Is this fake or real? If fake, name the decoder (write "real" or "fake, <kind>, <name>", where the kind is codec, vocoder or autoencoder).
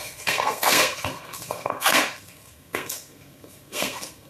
fake, codec, SNAC